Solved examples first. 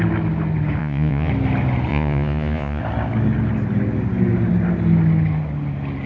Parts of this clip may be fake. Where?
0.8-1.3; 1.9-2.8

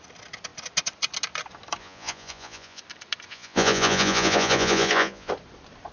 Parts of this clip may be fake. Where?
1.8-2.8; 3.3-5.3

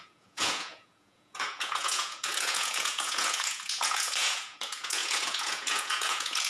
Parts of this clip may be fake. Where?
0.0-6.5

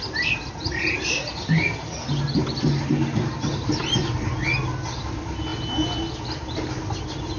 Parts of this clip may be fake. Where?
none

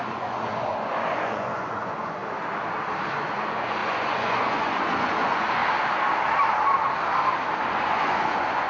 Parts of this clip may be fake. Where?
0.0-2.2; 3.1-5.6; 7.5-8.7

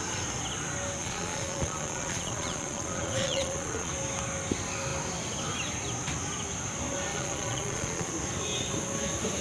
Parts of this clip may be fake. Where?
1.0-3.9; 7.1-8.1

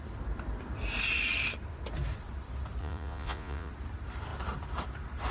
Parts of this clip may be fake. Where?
2.8-3.7